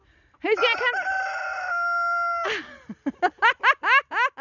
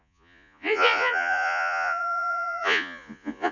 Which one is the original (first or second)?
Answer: first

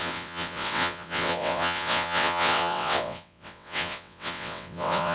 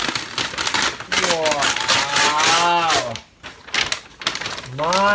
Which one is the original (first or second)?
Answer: second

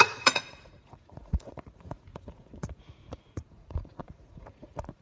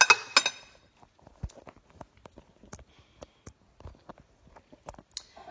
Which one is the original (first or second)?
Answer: second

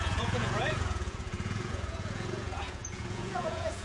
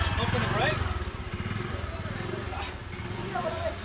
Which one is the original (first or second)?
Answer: second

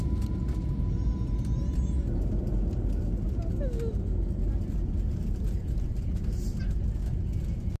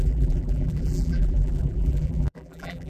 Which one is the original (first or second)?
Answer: first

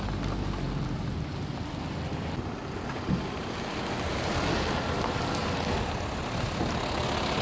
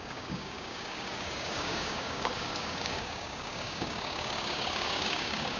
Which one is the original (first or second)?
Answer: first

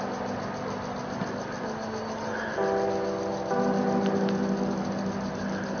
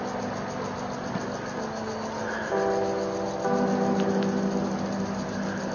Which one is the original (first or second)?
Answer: second